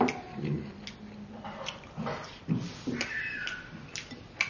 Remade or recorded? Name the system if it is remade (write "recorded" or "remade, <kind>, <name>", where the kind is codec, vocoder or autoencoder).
recorded